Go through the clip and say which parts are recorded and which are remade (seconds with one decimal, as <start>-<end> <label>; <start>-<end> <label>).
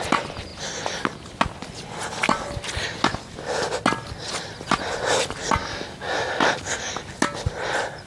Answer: 0.0-5.6 recorded; 5.6-6.9 remade; 6.9-8.1 recorded